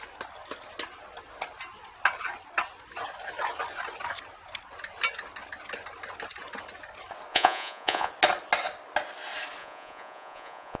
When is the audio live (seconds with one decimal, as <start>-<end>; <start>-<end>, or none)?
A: 0.0-7.3; 8.1-9.6